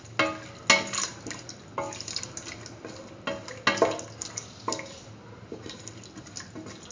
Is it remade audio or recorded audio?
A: recorded